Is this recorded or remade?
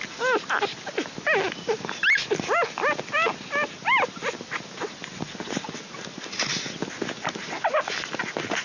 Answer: recorded